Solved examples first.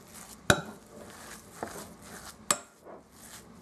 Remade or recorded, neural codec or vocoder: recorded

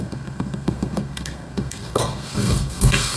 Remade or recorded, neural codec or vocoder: remade, codec, SNAC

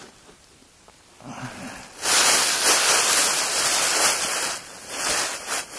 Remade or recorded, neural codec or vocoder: recorded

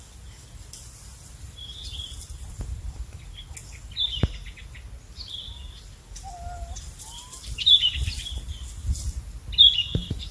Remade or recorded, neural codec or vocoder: recorded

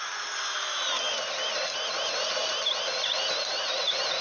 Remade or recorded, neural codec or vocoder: recorded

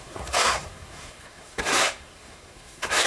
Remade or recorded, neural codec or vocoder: remade, codec, SNAC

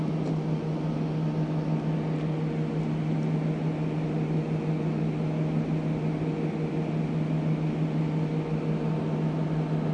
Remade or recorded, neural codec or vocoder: recorded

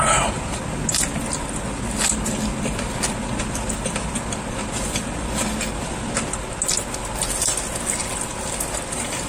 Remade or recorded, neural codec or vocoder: recorded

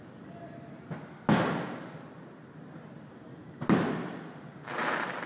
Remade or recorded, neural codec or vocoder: recorded